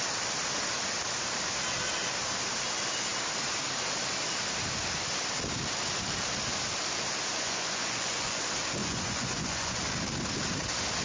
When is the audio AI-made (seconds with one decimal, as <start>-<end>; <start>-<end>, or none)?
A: 7.3-8.4; 8.8-9.8